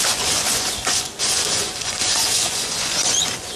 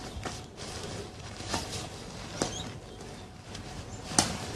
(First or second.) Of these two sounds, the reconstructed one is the first